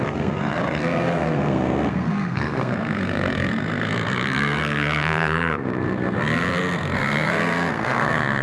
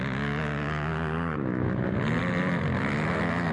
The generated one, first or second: first